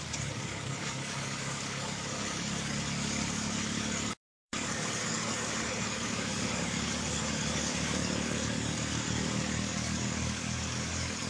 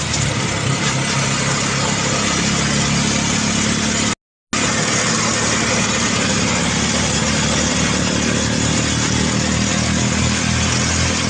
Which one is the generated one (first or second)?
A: first